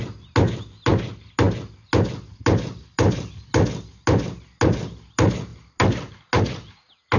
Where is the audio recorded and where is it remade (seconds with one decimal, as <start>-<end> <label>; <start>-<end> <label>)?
0.0-7.2 recorded